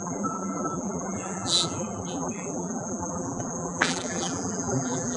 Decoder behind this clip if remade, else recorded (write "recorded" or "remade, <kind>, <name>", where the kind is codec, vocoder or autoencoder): remade, vocoder, BigVGAN v2